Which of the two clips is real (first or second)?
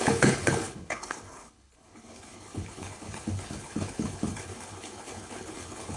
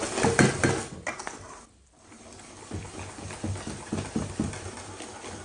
second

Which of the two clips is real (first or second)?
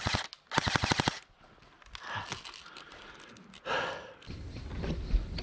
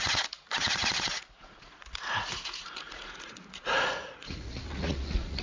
first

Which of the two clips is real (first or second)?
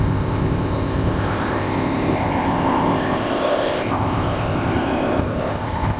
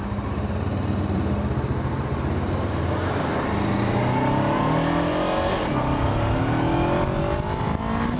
second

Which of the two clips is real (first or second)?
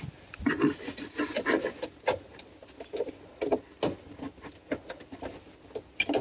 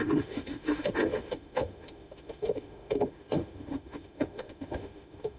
first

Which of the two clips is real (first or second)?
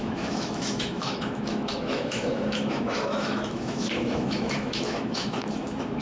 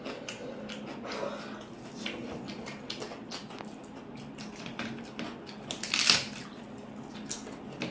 second